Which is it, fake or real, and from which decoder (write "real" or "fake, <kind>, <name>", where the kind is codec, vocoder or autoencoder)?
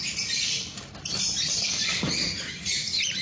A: fake, vocoder, BigVGAN v2